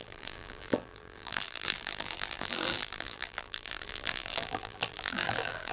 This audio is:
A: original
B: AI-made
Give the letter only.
B